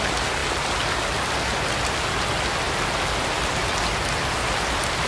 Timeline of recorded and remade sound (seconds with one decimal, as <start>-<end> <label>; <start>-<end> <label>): 0.0-5.1 recorded